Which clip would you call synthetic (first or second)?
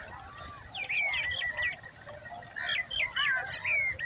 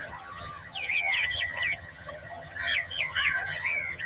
second